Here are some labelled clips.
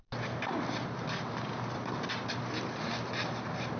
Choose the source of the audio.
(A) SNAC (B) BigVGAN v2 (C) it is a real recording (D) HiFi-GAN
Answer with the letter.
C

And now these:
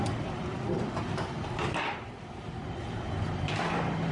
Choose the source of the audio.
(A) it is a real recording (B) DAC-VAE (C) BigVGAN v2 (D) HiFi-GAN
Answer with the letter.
C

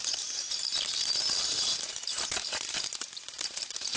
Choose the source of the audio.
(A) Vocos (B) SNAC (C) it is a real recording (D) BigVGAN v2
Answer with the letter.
D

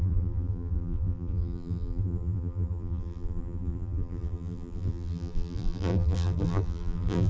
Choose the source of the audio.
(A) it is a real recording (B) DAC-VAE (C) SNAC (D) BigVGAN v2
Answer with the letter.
D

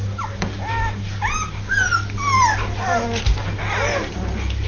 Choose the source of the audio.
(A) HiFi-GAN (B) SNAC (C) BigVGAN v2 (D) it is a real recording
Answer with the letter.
D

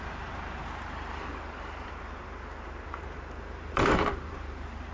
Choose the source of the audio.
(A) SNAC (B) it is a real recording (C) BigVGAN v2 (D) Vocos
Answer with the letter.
C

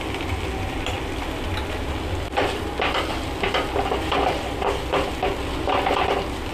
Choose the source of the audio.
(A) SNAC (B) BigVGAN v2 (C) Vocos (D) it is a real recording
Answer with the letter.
D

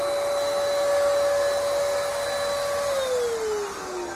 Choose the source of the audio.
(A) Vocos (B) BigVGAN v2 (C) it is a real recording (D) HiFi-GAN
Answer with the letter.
C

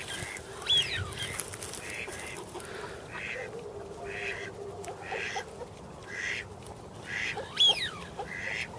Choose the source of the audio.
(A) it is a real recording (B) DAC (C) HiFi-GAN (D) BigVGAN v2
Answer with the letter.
A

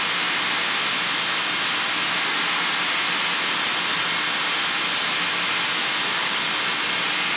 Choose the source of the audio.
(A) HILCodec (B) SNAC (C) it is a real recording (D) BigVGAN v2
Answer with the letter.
C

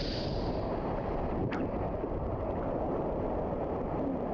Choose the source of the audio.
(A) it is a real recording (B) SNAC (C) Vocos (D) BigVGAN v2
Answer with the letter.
A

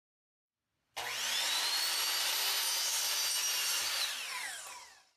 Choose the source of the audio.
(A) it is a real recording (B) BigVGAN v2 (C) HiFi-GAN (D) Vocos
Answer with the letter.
A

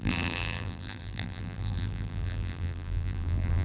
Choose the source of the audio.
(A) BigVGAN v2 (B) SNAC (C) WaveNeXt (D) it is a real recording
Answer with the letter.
A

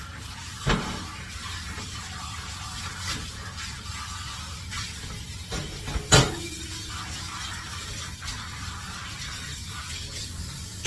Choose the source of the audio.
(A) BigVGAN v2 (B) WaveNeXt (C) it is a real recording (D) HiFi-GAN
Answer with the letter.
C